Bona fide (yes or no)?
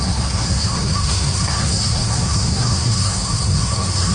no